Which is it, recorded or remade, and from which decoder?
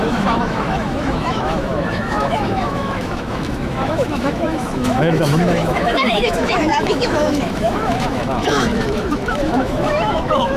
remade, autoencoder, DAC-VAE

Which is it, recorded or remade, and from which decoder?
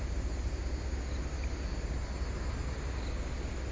recorded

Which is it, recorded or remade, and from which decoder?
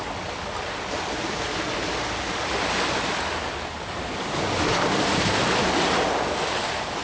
recorded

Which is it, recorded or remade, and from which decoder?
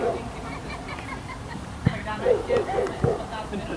remade, vocoder, BigVGAN v2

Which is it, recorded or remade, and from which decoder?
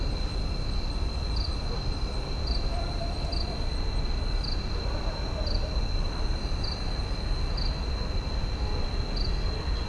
recorded